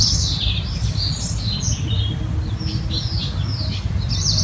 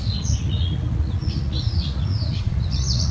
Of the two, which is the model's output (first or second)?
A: second